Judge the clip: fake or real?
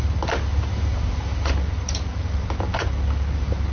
real